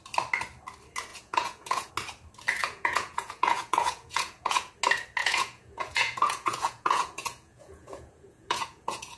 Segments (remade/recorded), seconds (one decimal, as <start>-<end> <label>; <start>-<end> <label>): 0.0-1.1 recorded; 1.1-1.9 remade; 1.9-2.6 recorded; 2.6-4.7 remade; 4.7-5.2 recorded; 5.2-9.2 remade